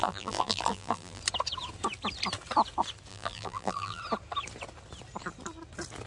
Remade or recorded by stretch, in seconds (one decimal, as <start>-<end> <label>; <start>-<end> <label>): 0.0-1.2 remade; 1.2-3.1 recorded; 3.1-4.0 remade; 4.0-6.1 recorded